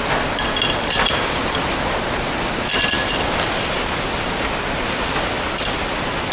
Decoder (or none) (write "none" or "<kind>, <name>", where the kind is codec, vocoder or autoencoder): none